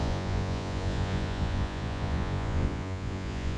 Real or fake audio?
fake